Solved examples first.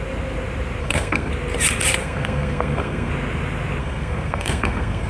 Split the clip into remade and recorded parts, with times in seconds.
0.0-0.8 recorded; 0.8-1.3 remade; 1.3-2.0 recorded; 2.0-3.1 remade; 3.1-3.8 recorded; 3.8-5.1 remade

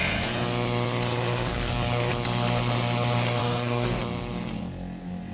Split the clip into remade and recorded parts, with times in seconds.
0.0-3.4 recorded; 3.4-4.0 remade; 4.0-5.3 recorded

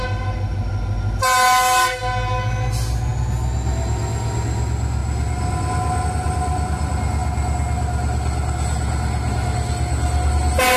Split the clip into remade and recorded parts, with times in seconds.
0.0-10.8 recorded